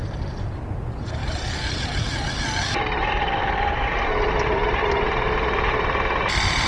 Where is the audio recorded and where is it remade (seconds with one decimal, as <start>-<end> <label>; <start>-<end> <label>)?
0.0-6.7 recorded

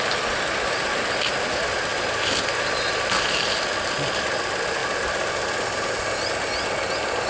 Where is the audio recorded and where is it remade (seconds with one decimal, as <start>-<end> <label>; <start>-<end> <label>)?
0.0-7.3 recorded

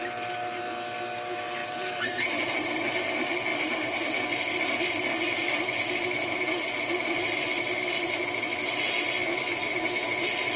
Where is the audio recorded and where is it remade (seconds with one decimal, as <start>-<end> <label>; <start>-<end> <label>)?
0.0-1.6 recorded; 1.6-2.3 remade; 2.3-10.6 recorded